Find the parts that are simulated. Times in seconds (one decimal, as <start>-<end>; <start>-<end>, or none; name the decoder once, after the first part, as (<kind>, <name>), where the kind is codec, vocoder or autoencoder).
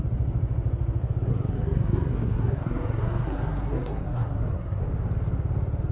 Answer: 1.3-4.8 (codec, SNAC)